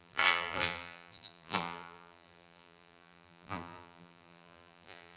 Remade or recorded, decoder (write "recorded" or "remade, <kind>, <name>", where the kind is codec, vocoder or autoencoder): remade, vocoder, BigVGAN v2